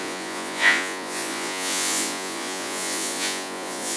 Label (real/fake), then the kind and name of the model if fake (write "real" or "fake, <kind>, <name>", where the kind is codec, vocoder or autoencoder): fake, vocoder, Vocos